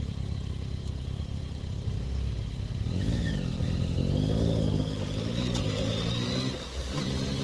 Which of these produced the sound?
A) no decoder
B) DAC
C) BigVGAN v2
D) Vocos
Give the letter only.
A